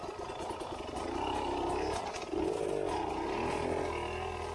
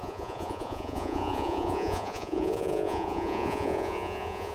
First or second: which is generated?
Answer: second